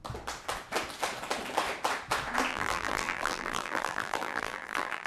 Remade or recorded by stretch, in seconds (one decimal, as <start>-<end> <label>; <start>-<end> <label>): 0.0-2.5 recorded; 2.5-5.1 remade